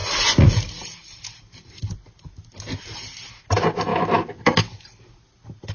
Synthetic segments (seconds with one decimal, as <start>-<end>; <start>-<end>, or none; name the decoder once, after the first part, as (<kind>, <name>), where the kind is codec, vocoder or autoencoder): 3.9-4.6 (autoencoder, DAC-VAE)